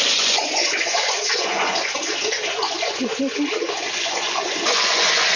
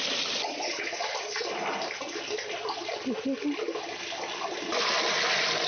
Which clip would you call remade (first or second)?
first